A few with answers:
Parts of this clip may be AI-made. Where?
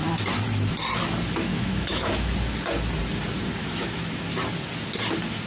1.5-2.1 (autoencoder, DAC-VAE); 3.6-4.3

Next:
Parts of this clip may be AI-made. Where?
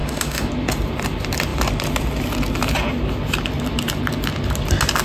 0.0-0.5 (autoencoder, DAC-VAE)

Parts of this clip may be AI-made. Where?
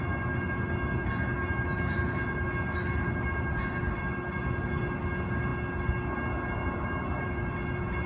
none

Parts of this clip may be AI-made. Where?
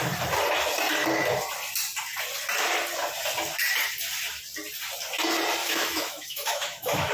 5.6-7.1 (autoencoder, DAC-VAE)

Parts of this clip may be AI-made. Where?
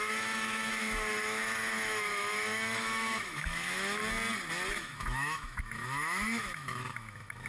0.0-4.0 (autoencoder, DAC-VAE); 4.7-7.5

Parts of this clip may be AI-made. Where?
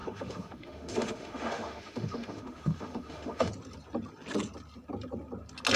0.0-3.5 (autoencoder, DAC-VAE)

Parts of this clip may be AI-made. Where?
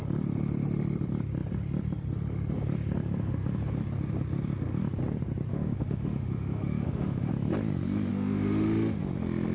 5.5-7.3 (autoencoder, DAC-VAE); 8.1-9.0